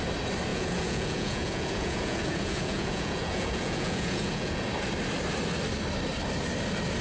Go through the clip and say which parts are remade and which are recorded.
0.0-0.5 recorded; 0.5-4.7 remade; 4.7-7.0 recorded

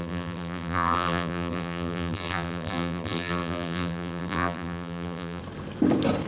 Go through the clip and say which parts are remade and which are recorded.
0.0-5.4 remade; 5.4-6.3 recorded

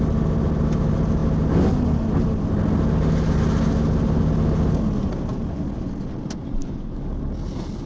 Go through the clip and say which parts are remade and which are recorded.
0.0-6.6 recorded; 6.6-7.2 remade; 7.2-7.9 recorded

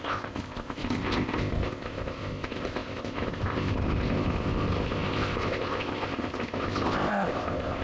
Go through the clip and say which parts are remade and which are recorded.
0.0-7.8 remade

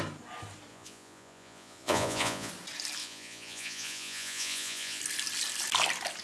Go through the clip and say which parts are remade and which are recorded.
0.0-0.7 recorded; 0.7-2.5 remade; 2.5-3.0 recorded; 3.0-5.0 remade; 5.0-6.2 recorded